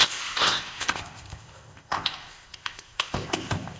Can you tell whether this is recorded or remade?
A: remade